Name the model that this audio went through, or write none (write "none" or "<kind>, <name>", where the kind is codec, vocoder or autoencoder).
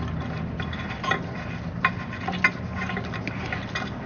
none